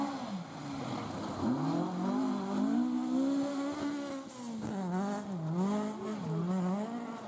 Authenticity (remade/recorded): recorded